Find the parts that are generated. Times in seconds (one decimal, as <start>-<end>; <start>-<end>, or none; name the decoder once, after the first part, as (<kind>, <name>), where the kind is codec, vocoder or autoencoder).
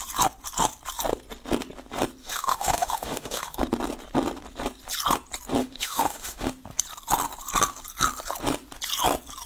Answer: 2.2-3.6 (autoencoder, DAC-VAE); 5.6-6.5